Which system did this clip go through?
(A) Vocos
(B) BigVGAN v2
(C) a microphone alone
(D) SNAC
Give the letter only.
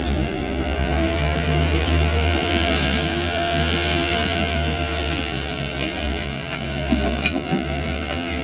B